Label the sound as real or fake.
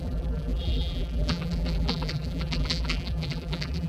fake